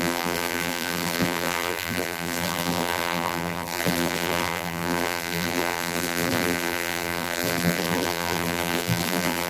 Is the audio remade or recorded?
remade